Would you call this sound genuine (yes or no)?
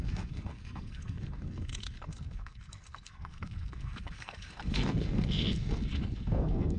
no